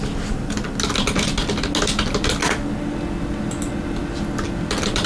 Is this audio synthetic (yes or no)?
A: no